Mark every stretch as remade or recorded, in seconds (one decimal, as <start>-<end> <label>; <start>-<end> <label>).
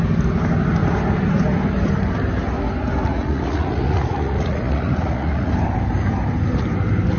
0.0-3.1 recorded; 3.1-5.5 remade; 5.5-7.2 recorded